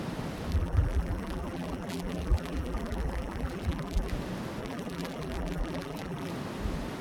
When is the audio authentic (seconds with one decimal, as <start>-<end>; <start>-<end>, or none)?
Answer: 0.0-0.5; 4.1-4.6; 6.3-7.0